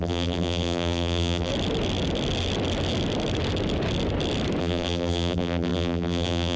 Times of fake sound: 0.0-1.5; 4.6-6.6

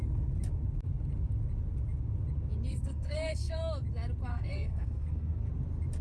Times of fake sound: 2.7-3.6; 4.3-5.5